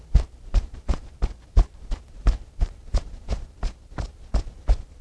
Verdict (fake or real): fake